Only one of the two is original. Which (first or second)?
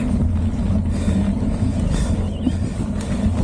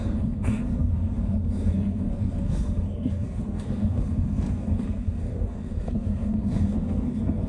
first